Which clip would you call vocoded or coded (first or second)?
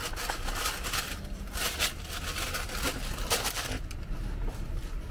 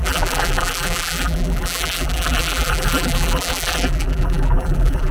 second